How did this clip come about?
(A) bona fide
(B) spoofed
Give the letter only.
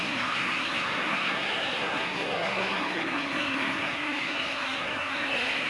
B